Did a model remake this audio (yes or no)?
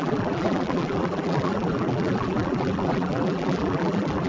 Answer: yes